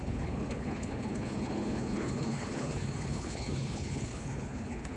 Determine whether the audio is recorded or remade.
remade